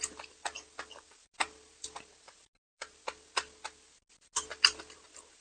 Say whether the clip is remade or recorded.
recorded